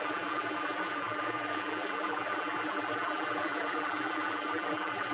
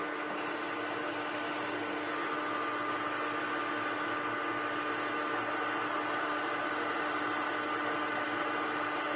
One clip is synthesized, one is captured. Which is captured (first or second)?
second